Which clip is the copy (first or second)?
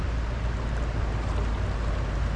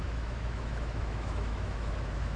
second